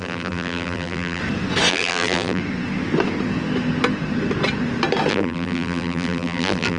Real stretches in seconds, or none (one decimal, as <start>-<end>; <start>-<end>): 1.2-1.7; 2.4-5.1